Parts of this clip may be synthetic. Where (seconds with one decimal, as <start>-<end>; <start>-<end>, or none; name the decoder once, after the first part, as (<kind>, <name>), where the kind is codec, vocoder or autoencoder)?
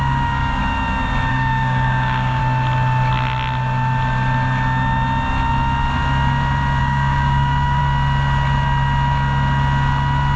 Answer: 0.0-0.6 (codec, DAC); 1.3-2.4; 6.8-7.8